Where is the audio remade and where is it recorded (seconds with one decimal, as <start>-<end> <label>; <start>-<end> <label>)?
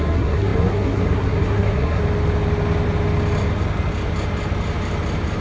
0.0-2.0 remade; 2.0-5.4 recorded